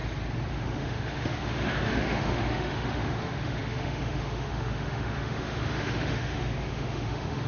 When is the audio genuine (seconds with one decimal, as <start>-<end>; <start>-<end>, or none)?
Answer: 0.0-0.5